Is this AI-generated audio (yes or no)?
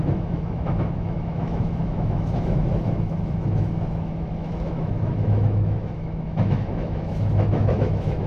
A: yes